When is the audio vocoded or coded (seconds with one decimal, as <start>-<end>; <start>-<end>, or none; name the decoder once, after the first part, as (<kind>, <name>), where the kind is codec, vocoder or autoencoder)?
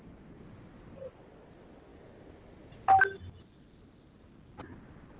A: none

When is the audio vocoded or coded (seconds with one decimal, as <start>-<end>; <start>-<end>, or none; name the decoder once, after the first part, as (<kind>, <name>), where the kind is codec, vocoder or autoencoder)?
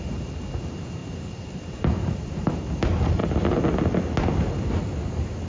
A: 0.0-3.2 (vocoder, BigVGAN v2)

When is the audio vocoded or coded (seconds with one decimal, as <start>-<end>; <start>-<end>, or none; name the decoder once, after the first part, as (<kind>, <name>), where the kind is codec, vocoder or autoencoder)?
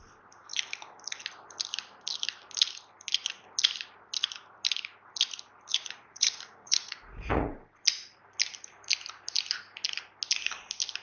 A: 5.7-7.5 (vocoder, Vocos)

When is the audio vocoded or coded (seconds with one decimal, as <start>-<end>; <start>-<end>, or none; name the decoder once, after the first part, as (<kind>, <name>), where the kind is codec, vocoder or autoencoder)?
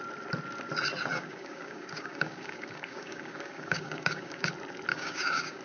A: 1.1-4.5 (codec, DAC); 4.9-5.6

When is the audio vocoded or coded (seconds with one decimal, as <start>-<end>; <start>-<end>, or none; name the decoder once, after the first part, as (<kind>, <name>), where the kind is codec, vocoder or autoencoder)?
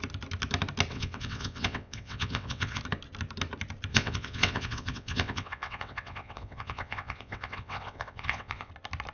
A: 0.9-2.8 (vocoder, WaveNeXt); 3.9-8.7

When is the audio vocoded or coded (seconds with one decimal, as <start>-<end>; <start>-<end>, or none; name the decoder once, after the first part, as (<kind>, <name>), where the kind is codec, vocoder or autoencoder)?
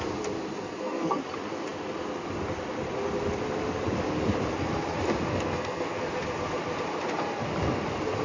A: 0.6-1.2 (codec, SNAC); 5.3-6.0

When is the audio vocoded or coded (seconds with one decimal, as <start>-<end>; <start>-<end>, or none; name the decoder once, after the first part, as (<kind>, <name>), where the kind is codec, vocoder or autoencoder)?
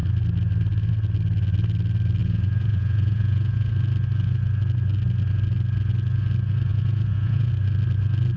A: 2.2-3.7 (vocoder, Vocos); 6.7-7.5